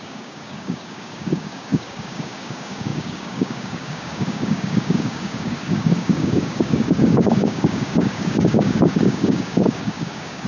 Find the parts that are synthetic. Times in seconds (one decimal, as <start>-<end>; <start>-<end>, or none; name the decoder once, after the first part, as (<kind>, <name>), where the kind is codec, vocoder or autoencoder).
0.0-10.5 (codec, DAC)